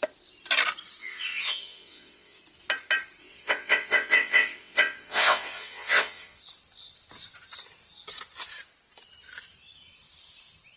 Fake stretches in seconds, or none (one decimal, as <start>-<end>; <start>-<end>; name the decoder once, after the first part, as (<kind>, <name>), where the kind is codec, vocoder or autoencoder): 1.0-2.4 (vocoder, WaveNeXt); 3.2-6.4